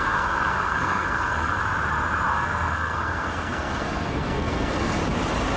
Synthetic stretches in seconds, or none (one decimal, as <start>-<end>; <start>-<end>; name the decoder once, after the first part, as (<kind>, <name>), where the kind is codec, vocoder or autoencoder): 0.0-1.6 (codec, SNAC); 2.3-5.0